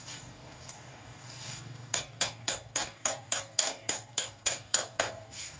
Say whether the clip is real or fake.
fake